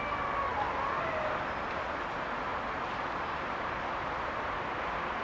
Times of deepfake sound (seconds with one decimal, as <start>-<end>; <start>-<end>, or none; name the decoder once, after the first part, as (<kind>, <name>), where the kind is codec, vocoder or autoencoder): 2.5-5.2 (vocoder, BigVGAN v2)